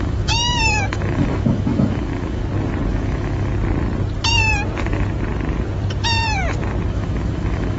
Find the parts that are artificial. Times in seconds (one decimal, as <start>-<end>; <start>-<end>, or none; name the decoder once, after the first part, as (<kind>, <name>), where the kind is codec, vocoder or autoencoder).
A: 0.0-2.4 (autoencoder, DAC-VAE); 2.9-3.5; 6.9-7.8